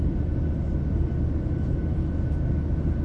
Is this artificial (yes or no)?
no